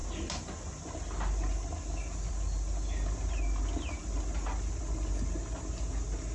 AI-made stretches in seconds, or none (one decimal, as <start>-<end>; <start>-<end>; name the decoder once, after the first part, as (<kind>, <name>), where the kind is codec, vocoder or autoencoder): none